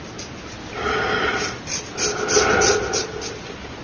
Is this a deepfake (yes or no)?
no